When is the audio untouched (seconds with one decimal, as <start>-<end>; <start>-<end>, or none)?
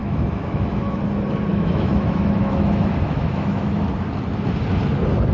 1.0-1.5; 3.8-5.3